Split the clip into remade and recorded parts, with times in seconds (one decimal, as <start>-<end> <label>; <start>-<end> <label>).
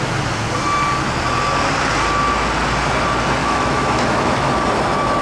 0.0-3.4 recorded; 3.4-4.5 remade; 4.5-5.2 recorded